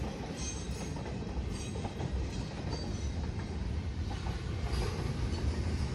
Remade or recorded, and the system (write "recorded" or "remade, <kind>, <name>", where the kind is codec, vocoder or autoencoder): remade, vocoder, BigVGAN v2